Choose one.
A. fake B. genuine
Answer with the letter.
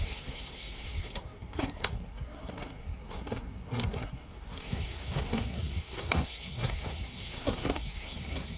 A